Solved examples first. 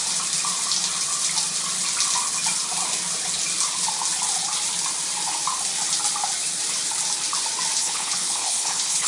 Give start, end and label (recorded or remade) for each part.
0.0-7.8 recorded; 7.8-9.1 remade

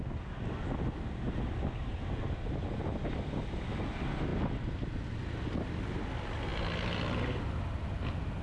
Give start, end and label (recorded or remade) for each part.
0.0-8.4 recorded

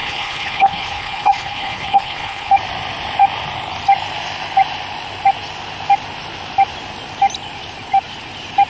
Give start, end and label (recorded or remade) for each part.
0.0-2.5 remade; 2.5-8.7 recorded